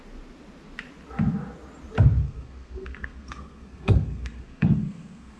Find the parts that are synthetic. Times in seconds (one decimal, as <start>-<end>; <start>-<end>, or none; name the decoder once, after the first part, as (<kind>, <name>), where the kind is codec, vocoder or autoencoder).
2.2-5.4 (codec, SNAC)